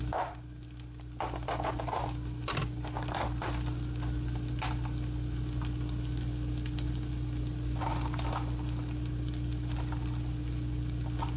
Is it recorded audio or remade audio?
recorded